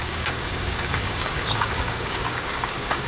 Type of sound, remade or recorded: remade